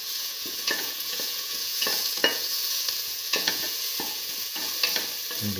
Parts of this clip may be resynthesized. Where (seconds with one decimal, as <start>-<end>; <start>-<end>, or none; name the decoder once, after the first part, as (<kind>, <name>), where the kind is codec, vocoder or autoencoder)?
0.0-4.7 (vocoder, Vocos)